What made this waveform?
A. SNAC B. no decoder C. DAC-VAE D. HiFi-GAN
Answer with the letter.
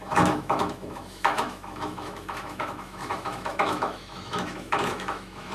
C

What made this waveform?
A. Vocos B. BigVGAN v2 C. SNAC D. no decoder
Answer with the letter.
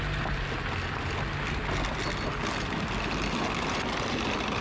D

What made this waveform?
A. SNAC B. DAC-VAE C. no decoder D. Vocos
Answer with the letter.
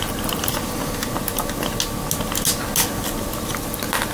C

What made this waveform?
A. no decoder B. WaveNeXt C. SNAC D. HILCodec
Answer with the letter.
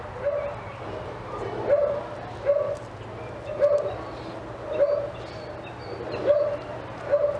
A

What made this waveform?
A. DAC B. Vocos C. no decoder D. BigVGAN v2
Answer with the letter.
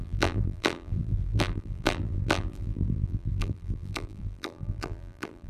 D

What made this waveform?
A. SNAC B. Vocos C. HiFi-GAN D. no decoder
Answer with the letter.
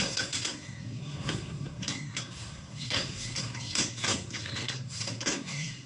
A